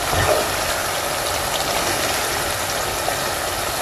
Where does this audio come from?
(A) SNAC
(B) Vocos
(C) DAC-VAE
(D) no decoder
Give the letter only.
D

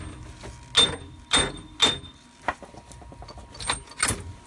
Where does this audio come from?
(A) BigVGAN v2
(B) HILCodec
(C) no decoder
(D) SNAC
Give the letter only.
C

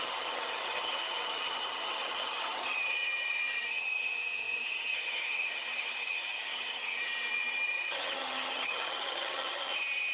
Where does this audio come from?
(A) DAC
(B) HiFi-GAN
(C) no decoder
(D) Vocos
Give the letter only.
B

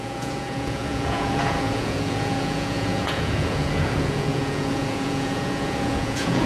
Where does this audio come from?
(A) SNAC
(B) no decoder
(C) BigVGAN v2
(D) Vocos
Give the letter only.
D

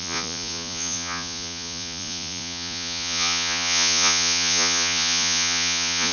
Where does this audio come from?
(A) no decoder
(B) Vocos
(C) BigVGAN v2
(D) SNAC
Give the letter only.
B